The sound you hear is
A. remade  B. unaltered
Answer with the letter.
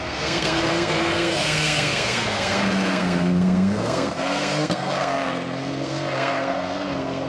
A